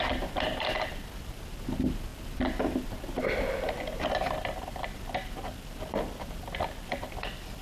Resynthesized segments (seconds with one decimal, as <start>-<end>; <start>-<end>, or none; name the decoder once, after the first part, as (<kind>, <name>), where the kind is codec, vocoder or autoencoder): none